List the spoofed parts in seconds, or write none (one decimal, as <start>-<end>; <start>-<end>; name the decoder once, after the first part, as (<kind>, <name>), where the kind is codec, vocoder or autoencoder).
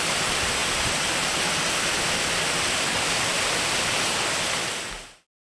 none